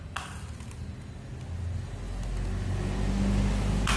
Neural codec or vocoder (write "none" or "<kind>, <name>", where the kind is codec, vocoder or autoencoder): none